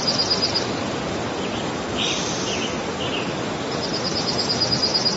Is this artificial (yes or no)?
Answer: no